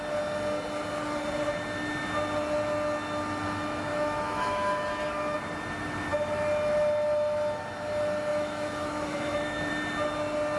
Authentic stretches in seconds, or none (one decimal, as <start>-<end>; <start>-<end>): 0.0-3.9; 5.0-8.3; 9.7-10.6